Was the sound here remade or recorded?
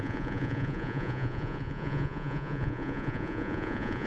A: remade